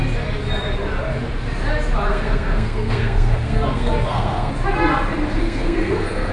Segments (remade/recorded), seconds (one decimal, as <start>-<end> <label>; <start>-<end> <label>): 0.0-2.1 recorded; 2.1-4.5 remade; 4.5-5.4 recorded; 5.4-6.3 remade